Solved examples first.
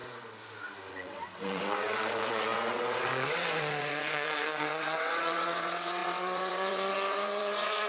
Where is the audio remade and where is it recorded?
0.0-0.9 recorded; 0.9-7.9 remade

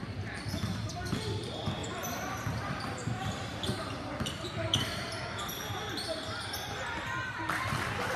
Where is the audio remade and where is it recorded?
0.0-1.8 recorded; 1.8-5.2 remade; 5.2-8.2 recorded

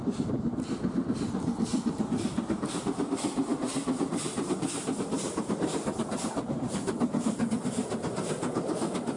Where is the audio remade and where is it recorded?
0.0-1.7 recorded; 1.7-2.8 remade; 2.8-3.5 recorded; 3.5-7.5 remade; 7.5-9.2 recorded

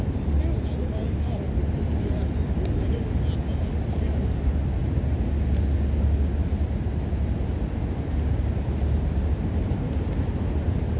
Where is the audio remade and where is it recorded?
0.0-11.0 recorded

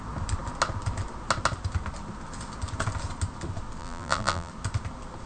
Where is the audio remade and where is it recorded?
0.0-3.8 recorded; 3.8-4.5 remade; 4.5-5.3 recorded

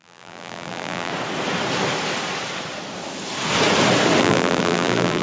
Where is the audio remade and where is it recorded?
0.0-1.1 remade; 1.1-4.2 recorded; 4.2-5.2 remade